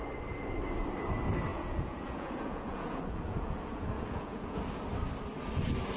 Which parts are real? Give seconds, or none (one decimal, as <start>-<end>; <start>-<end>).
0.0-1.5; 4.8-6.0